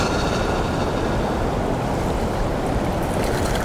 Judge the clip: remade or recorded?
recorded